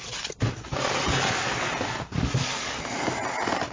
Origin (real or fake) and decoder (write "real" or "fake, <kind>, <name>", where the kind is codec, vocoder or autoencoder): real